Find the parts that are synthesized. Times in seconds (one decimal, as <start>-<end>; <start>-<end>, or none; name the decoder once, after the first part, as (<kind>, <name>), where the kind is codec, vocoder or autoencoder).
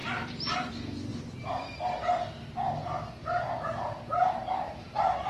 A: 0.0-0.7 (vocoder, BigVGAN v2); 1.1-1.6; 3.2-5.3